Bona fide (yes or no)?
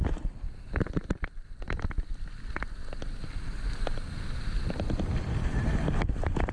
yes